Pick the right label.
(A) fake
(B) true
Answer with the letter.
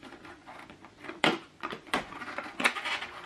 A